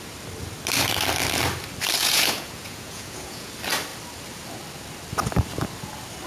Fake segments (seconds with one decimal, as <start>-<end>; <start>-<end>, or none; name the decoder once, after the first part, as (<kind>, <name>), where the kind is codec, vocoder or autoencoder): 2.0-3.5 (vocoder, Vocos)